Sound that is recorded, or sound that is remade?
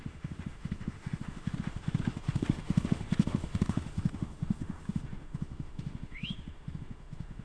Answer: remade